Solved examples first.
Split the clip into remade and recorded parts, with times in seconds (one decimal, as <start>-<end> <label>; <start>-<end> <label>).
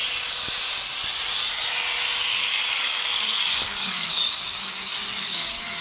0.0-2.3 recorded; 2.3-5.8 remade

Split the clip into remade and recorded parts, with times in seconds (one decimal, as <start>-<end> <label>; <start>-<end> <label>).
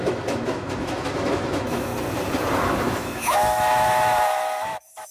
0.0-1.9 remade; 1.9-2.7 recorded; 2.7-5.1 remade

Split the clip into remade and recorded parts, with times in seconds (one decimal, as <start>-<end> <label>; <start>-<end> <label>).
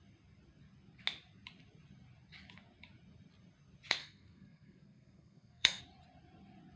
0.0-4.0 recorded; 4.0-5.8 remade; 5.8-6.8 recorded